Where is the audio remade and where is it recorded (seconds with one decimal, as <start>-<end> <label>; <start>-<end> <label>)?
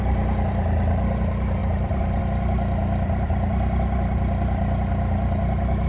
0.0-1.6 recorded; 1.6-2.2 remade; 2.2-5.9 recorded